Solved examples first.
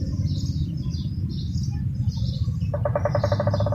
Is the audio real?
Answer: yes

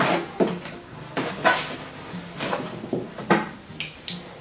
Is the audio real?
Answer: yes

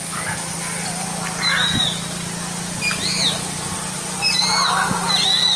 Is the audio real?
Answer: yes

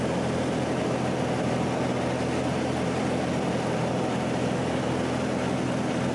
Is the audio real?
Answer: yes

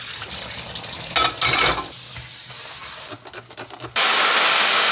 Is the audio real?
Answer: yes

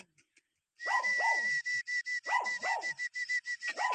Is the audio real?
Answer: yes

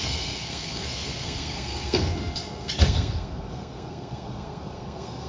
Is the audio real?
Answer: no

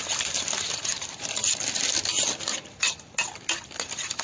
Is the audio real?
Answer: yes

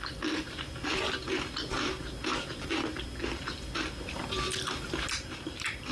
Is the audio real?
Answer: no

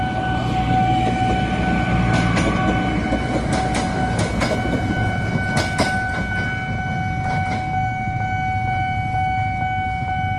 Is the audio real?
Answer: yes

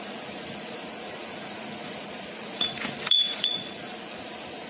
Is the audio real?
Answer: no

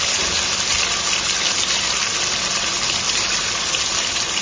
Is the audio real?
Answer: yes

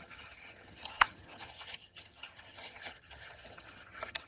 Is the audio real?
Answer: no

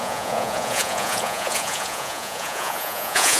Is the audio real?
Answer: no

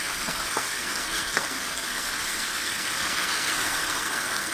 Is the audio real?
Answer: no